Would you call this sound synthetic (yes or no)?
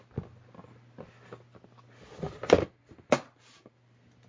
no